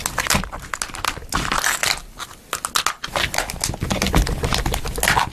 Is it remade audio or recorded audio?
recorded